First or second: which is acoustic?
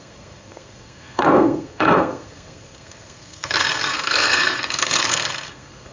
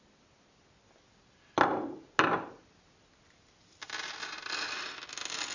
second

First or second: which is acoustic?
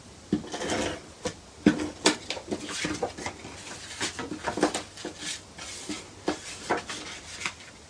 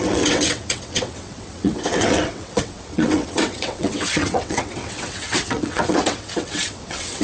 first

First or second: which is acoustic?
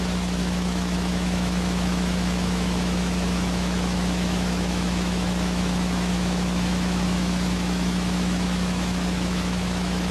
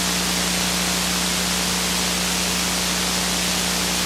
second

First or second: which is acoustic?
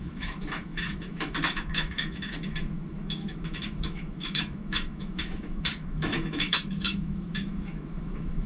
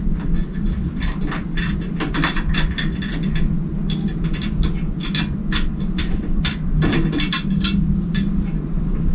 second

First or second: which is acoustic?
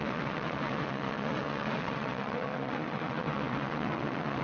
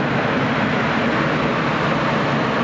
second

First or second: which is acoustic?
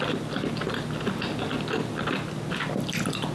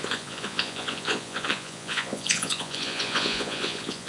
first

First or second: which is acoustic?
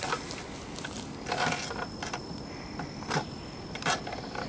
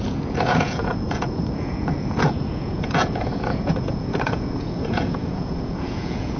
first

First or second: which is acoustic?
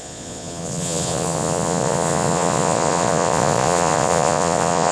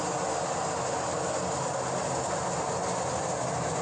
second